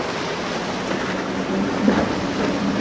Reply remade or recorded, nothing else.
remade